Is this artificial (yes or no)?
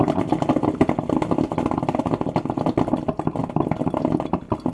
no